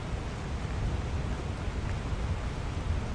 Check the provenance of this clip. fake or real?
real